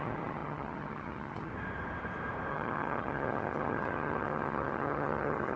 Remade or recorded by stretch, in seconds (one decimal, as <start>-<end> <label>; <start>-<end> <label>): 0.0-1.5 remade; 1.5-2.5 recorded; 2.5-5.6 remade